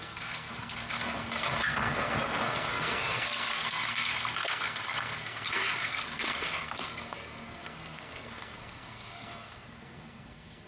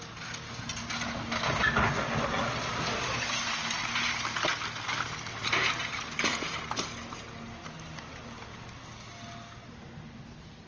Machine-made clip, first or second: first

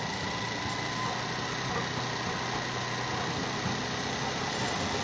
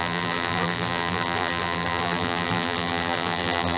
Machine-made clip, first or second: second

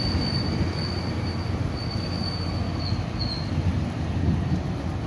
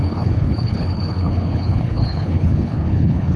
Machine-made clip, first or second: second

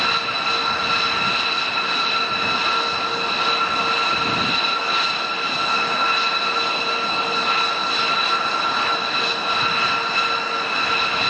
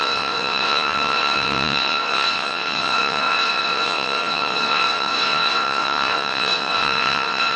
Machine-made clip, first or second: second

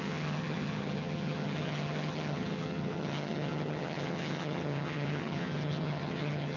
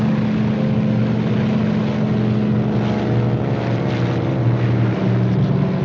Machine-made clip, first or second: first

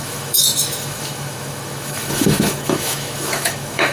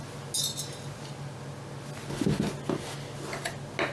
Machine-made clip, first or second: first